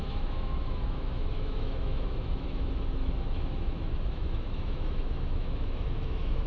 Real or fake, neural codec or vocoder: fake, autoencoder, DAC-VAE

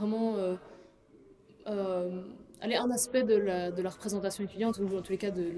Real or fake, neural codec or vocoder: real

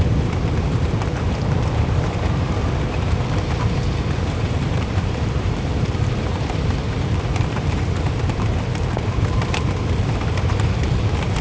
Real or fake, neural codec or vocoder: fake, vocoder, BigVGAN v2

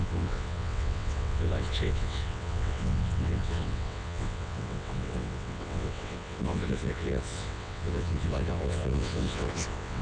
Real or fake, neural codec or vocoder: fake, vocoder, WaveNeXt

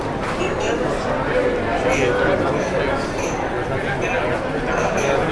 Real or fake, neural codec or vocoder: real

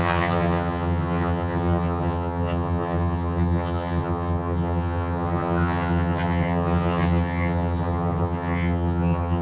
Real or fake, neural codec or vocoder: fake, vocoder, HiFi-GAN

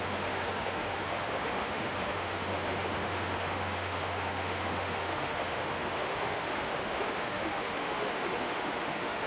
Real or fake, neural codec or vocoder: fake, autoencoder, DAC-VAE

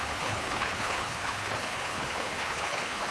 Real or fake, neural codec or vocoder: fake, codec, HILCodec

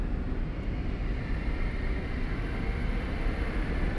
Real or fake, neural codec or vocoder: fake, vocoder, BigVGAN v2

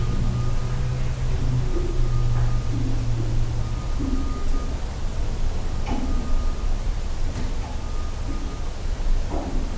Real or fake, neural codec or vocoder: real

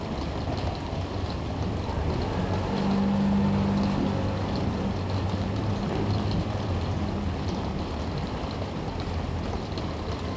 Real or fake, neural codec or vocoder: real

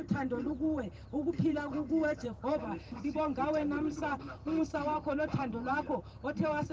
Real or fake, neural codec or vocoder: fake, vocoder, BigVGAN v2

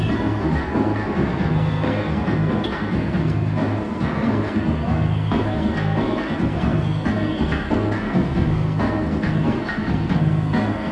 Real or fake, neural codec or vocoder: fake, codec, SNAC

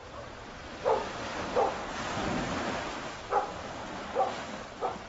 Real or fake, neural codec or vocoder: fake, vocoder, BigVGAN v2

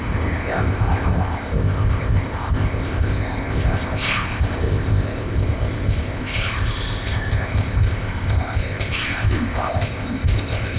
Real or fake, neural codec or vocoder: fake, codec, ZipCodec